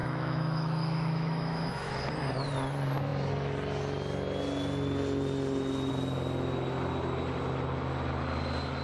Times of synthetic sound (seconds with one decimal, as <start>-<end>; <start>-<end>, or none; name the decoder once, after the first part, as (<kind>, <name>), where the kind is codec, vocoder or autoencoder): 0.0-1.9 (autoencoder, DAC-VAE)